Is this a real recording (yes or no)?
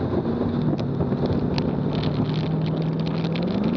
yes